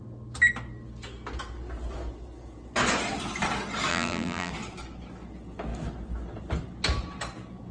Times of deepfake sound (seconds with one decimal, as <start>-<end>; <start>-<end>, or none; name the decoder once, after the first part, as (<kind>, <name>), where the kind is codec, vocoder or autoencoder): 3.9-4.5 (vocoder, BigVGAN v2)